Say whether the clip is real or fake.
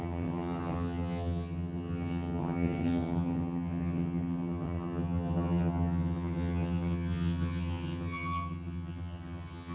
fake